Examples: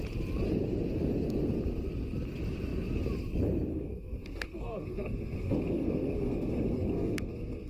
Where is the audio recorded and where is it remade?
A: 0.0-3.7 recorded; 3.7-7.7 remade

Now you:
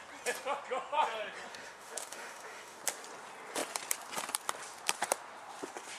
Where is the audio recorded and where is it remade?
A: 0.0-1.5 recorded; 1.5-2.8 remade; 2.8-6.0 recorded

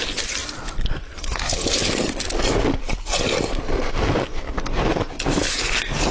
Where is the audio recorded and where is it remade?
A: 0.0-6.1 recorded